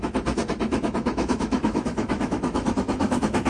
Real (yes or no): no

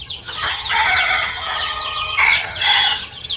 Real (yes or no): no